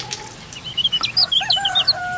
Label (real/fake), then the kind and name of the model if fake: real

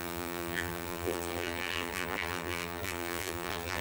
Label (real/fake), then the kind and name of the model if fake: fake, vocoder, BigVGAN v2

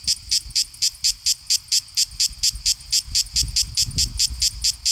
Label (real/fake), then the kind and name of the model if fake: real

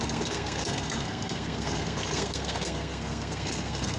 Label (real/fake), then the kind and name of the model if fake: fake, codec, SNAC